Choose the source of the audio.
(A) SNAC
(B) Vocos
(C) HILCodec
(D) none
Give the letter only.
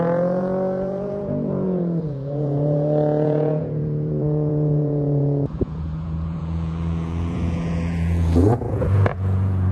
B